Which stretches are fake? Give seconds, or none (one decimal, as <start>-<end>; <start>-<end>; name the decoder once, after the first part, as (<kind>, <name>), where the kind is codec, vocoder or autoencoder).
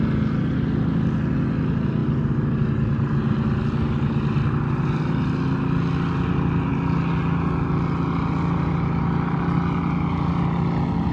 none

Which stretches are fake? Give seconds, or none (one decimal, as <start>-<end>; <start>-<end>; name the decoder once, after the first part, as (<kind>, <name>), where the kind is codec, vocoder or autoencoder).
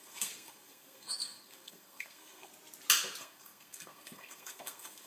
0.0-2.5 (codec, SNAC); 3.2-5.1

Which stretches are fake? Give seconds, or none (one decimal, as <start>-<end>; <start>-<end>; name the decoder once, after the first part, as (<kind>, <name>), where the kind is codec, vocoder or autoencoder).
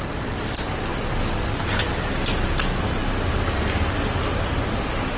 none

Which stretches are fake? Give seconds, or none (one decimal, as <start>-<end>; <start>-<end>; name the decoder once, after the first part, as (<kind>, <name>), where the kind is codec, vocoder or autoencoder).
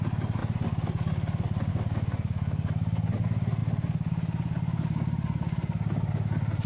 none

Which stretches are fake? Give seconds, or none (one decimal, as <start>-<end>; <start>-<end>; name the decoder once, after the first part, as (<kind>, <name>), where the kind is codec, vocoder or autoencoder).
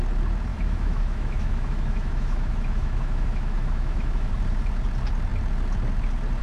0.5-4.3 (autoencoder, DAC-VAE)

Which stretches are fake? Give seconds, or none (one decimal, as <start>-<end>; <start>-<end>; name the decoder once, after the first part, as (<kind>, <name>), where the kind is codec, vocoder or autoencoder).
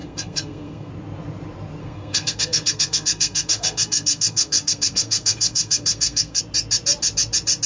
0.0-0.9 (codec, SNAC); 1.8-6.4